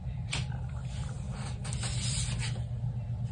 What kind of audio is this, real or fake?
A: real